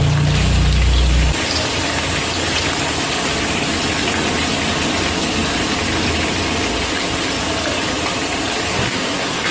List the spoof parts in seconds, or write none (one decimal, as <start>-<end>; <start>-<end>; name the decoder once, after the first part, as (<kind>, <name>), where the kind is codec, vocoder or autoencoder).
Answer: 8.7-9.5 (codec, SNAC)